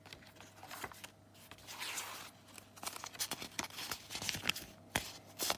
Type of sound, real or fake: real